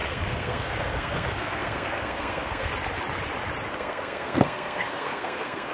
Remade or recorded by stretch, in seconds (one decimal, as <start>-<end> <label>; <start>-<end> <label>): 0.0-2.7 remade; 2.7-3.7 recorded; 3.7-5.7 remade